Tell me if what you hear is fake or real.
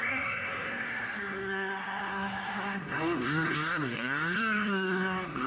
fake